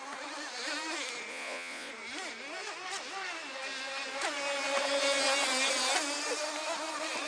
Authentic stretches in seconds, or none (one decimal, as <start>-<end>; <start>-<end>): 0.0-1.3; 1.9-7.3